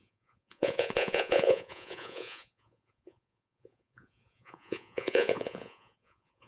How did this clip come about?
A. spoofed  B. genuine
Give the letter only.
A